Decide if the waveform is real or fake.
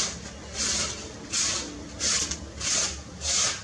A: real